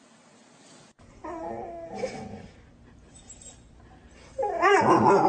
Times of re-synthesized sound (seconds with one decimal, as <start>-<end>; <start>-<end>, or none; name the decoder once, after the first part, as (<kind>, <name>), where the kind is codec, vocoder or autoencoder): none

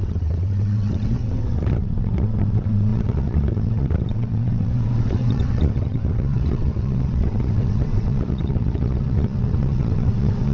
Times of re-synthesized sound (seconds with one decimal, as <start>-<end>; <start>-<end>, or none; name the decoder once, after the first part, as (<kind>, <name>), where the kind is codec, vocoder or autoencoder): 0.0-10.5 (vocoder, WaveNeXt)

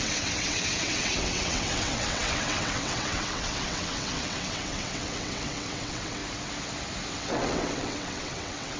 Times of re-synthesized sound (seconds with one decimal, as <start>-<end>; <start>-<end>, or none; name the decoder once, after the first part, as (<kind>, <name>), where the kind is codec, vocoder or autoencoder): 0.0-6.2 (vocoder, WaveNeXt); 7.1-8.8

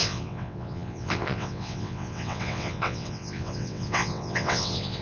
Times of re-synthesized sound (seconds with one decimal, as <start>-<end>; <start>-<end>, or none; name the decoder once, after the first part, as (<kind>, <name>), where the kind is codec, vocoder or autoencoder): 0.0-5.0 (vocoder, WaveNeXt)